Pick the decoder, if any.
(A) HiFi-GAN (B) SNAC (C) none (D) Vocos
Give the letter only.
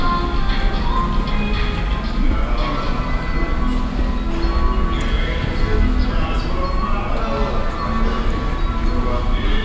C